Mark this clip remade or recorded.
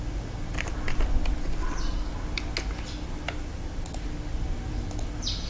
recorded